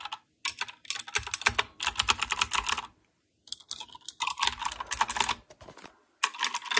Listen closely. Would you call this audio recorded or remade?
recorded